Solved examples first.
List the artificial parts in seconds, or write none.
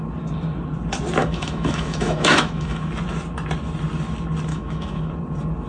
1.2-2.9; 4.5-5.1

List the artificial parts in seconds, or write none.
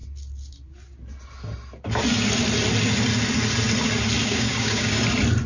4.2-5.0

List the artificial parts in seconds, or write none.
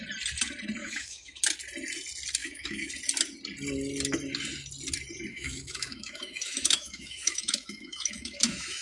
0.8-1.4; 2.4-2.9; 5.3-8.8